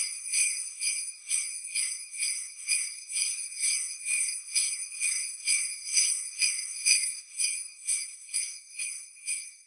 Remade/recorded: remade